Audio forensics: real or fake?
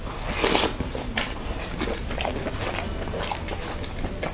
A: real